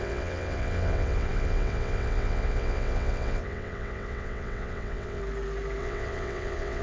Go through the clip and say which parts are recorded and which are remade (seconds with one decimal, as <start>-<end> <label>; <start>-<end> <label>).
0.0-5.2 remade; 5.2-5.8 recorded; 5.8-6.8 remade